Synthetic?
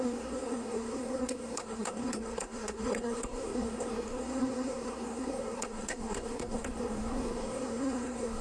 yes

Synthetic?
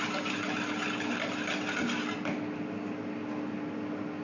no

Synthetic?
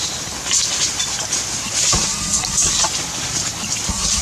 no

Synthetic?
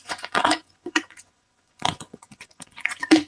yes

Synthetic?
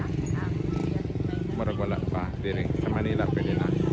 no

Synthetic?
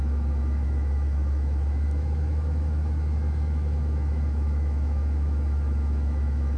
yes